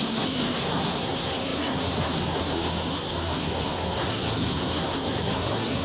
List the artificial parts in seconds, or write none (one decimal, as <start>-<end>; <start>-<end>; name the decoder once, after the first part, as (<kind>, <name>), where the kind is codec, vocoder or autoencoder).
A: 0.0-5.8 (codec, SNAC)